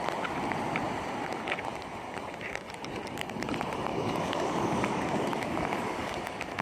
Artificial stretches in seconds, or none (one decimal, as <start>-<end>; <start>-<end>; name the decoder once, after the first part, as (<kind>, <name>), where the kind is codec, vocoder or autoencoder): 3.9-6.6 (codec, DAC)